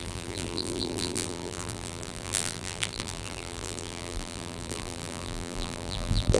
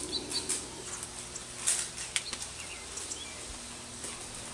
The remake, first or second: first